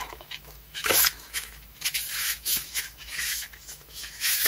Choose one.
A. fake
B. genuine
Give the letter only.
A